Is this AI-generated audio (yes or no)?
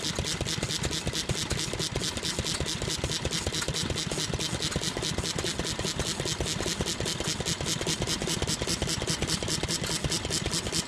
no